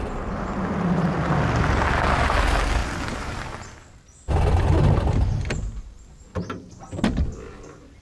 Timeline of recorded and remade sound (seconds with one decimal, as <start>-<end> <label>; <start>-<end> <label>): 0.0-8.0 recorded